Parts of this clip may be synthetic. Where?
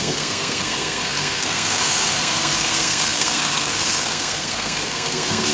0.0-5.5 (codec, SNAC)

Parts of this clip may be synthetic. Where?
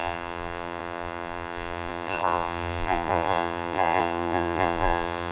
0.0-5.3 (vocoder, BigVGAN v2)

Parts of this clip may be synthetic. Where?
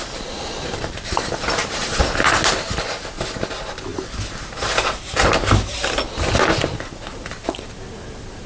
none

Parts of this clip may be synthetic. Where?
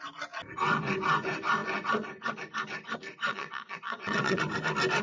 3.3-4.4 (vocoder, WaveNeXt)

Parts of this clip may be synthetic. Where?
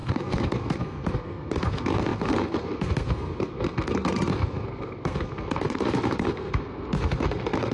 0.0-7.7 (codec, SNAC)